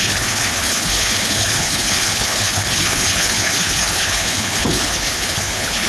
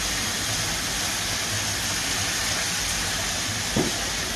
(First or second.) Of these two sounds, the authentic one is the second